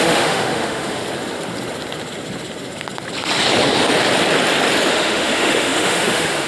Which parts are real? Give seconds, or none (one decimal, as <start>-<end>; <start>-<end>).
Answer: 1.0-4.9